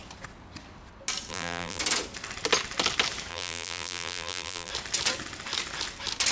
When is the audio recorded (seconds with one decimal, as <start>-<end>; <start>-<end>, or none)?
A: 0.0-1.3; 1.8-3.3; 4.7-6.3

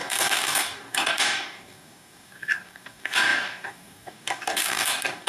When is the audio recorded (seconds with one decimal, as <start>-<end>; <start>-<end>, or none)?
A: none

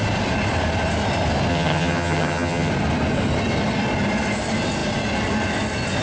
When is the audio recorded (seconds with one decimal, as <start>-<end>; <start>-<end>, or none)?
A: 0.0-1.5; 2.7-6.0

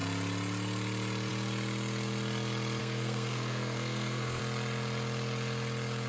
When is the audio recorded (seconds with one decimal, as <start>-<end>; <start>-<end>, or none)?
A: 0.0-2.8; 4.4-6.1